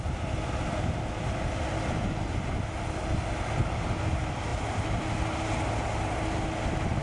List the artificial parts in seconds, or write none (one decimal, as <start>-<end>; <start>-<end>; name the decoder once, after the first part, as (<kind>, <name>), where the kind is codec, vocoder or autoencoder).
none